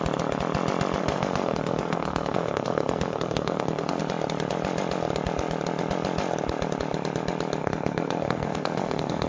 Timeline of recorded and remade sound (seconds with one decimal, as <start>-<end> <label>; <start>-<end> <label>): 0.0-1.0 recorded; 1.0-4.0 remade; 4.0-7.6 recorded; 7.6-9.3 remade